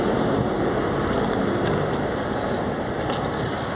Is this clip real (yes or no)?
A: yes